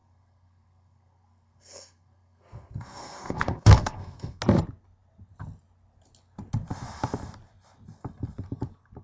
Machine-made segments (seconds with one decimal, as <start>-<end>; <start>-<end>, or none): 0.0-4.4